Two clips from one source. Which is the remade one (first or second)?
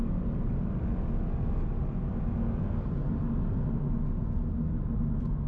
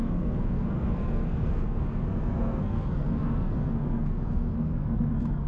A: second